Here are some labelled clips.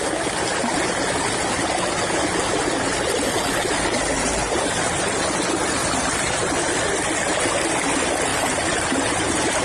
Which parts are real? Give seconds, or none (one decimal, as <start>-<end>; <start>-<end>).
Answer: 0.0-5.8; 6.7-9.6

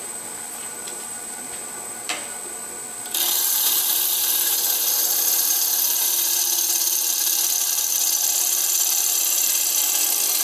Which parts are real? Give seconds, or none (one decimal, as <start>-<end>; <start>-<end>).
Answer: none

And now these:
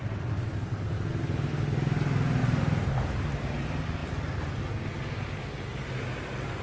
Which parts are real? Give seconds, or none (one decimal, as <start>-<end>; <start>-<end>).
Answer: 0.0-2.4; 2.9-6.6